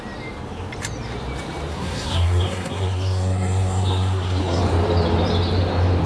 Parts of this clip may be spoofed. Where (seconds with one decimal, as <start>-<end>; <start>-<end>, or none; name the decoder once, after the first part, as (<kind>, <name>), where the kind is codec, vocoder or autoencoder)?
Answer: 1.7-4.6 (codec, SNAC)